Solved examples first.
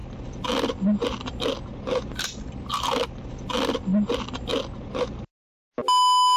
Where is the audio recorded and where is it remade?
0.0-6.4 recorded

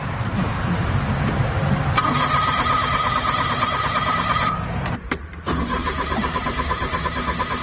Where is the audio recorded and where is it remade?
0.0-7.6 remade

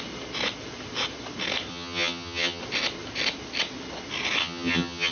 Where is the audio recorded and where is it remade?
0.0-1.7 recorded; 1.7-2.6 remade; 2.6-4.4 recorded; 4.4-5.1 remade

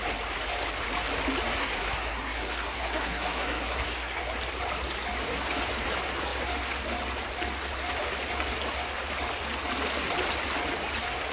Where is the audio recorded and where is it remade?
0.0-1.5 recorded; 1.5-4.2 remade; 4.2-11.3 recorded

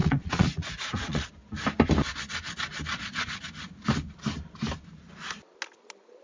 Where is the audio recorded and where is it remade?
0.0-1.3 remade; 1.3-2.9 recorded; 2.9-3.4 remade; 3.4-6.2 recorded

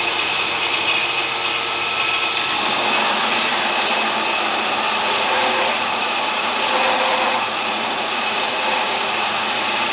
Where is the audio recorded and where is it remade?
0.0-1.0 remade; 1.0-3.1 recorded; 3.1-3.5 remade; 3.5-5.0 recorded; 5.0-9.9 remade

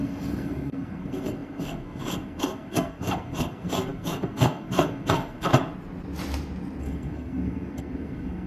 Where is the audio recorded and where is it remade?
0.0-5.5 remade; 5.5-6.8 recorded; 6.8-8.5 remade

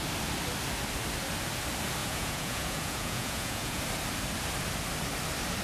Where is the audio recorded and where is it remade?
0.0-2.0 recorded; 2.0-3.8 remade; 3.8-5.6 recorded